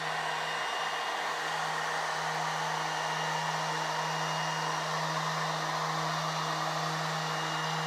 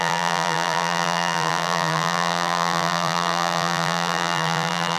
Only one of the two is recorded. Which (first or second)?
first